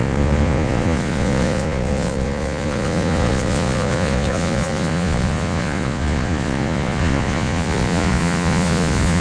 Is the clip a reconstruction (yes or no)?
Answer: yes